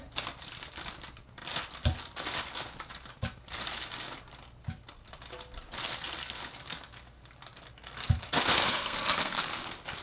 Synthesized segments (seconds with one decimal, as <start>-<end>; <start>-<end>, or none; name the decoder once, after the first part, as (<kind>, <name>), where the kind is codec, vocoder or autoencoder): 8.7-9.4 (codec, SNAC)